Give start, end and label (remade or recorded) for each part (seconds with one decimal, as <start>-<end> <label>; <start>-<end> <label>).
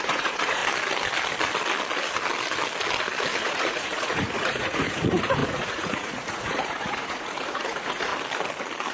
0.0-0.6 remade; 0.6-3.4 recorded; 3.4-8.1 remade; 8.1-8.9 recorded